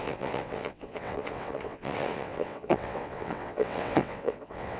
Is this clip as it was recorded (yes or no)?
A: no